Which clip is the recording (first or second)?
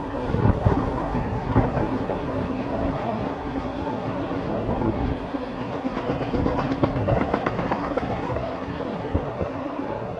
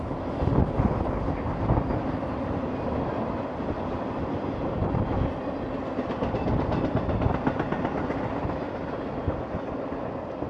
second